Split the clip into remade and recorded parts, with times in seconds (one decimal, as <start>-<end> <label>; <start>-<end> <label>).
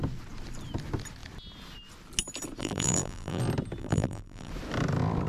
0.0-2.6 recorded; 2.6-3.4 remade; 3.4-3.8 recorded; 3.8-4.5 remade; 4.5-5.3 recorded